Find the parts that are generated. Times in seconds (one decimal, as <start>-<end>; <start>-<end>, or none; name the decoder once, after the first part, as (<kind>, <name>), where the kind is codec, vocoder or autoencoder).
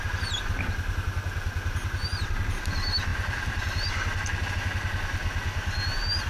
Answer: 3.1-4.5 (vocoder, BigVGAN v2)